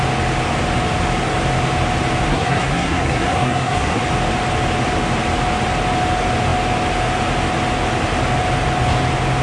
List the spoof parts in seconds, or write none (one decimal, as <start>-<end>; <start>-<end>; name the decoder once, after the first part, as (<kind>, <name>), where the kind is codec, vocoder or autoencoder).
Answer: 2.3-4.0 (codec, SNAC)

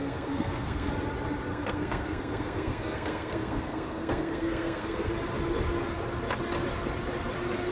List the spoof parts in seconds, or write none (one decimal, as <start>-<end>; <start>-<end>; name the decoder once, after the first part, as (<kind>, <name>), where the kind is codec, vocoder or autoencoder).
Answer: 0.0-0.9 (codec, SNAC); 1.5-5.1

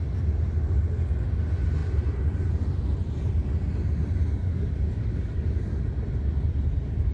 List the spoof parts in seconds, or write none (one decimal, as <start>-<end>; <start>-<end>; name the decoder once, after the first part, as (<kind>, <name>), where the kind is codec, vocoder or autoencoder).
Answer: 4.3-5.7 (codec, DAC)

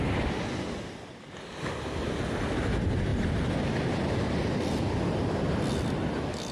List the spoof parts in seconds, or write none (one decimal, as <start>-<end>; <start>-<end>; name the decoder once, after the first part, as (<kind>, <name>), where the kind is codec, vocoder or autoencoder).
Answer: none

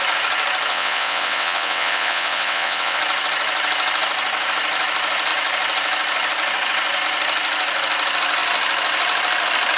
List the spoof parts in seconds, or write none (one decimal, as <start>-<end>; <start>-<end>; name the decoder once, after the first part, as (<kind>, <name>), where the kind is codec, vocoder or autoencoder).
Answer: 0.7-3.0 (vocoder, WaveNeXt)